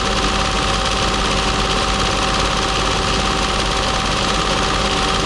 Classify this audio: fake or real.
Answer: real